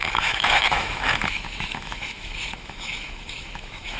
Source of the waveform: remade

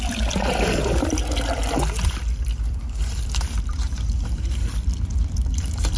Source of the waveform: remade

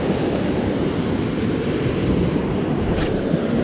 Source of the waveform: recorded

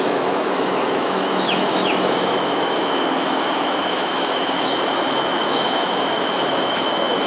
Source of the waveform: remade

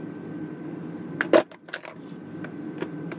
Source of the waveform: recorded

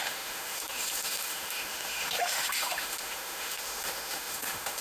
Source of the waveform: remade